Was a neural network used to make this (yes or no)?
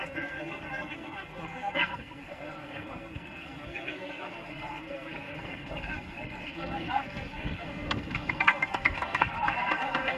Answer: yes